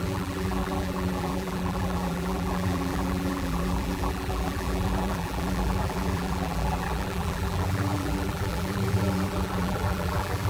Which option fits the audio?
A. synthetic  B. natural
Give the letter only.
A